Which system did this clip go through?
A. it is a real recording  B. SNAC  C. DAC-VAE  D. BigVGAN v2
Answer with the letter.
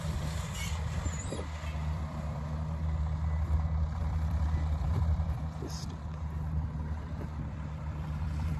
D